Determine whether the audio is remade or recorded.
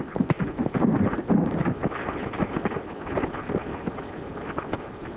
recorded